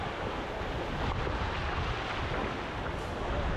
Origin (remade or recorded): recorded